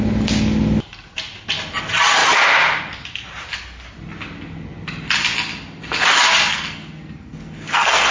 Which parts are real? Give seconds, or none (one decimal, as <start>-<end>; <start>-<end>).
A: 0.0-6.5